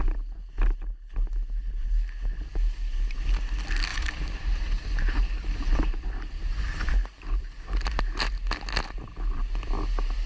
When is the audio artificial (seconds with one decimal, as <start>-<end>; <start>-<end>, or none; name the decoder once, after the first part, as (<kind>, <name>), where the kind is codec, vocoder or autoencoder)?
3.9-8.0 (vocoder, BigVGAN v2)